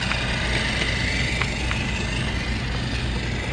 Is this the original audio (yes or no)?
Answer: yes